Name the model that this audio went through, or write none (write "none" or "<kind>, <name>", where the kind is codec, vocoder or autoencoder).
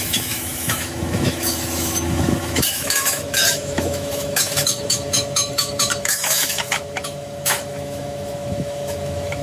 autoencoder, DAC-VAE